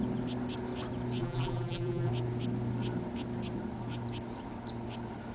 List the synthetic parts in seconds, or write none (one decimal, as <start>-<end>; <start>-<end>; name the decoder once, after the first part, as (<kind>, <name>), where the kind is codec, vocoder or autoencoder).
1.2-2.1 (vocoder, BigVGAN v2)